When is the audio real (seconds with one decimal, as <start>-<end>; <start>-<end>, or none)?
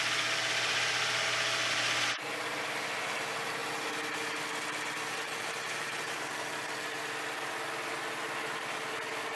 0.0-9.4